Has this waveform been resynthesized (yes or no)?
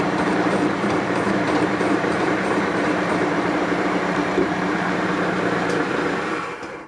yes